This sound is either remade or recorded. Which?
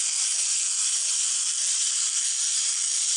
remade